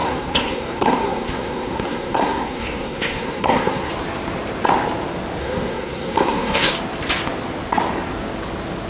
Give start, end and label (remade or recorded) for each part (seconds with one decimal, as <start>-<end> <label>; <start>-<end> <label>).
0.0-3.9 remade; 3.9-5.4 recorded; 5.4-6.7 remade; 6.7-8.9 recorded